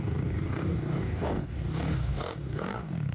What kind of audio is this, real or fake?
fake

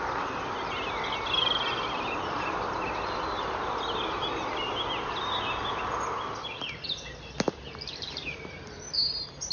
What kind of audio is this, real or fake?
real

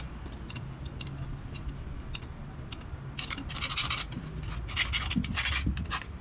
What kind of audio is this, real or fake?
real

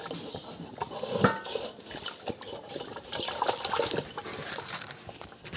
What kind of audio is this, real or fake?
real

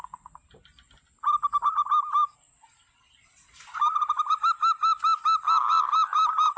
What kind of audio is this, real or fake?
real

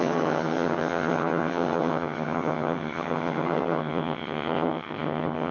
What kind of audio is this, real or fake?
fake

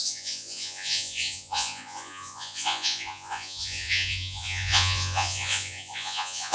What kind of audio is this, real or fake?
fake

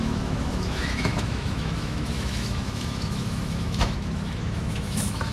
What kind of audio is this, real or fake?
fake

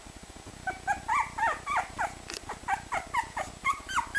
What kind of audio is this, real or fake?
real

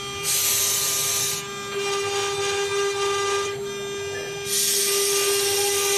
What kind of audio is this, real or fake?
real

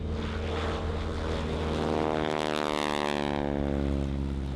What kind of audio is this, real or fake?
real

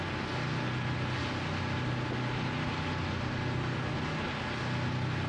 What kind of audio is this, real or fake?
real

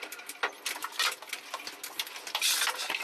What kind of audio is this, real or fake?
real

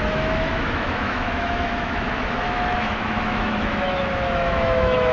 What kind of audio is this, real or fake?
fake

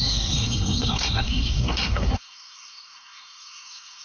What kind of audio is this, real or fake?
fake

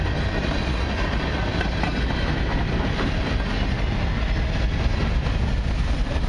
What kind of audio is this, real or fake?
real